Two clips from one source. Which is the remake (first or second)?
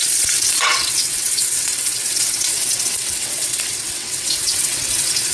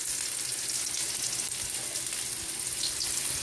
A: first